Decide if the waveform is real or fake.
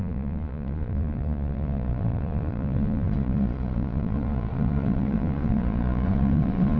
fake